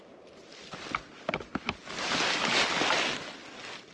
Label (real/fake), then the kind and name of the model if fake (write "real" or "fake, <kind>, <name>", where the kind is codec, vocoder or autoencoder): real